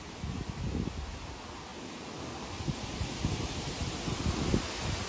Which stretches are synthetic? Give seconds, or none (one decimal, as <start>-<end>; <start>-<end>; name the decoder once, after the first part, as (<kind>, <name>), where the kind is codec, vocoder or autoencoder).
none